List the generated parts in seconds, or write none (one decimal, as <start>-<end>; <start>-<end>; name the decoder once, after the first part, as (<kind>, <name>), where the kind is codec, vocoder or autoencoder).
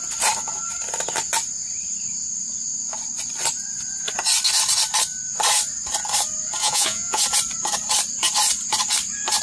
6.6-7.2 (vocoder, Vocos)